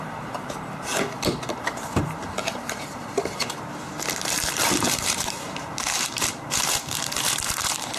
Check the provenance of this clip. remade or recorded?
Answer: remade